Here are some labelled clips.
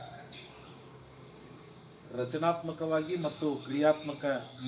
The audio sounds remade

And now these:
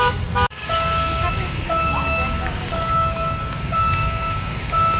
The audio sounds remade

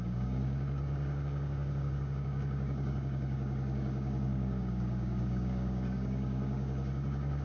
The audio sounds remade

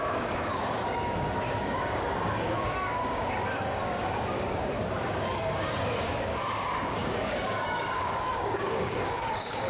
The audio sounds remade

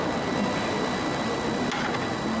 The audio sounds recorded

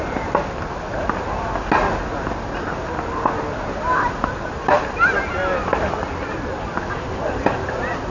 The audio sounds recorded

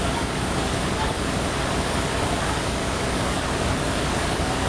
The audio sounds remade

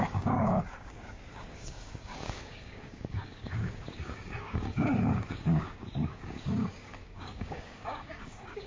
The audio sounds remade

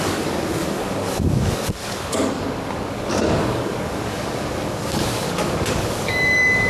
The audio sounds remade